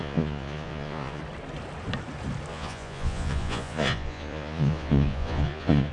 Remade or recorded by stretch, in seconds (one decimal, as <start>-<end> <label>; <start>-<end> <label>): 0.0-1.2 remade; 1.2-2.5 recorded; 2.5-5.9 remade